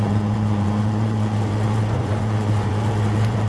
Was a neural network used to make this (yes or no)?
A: yes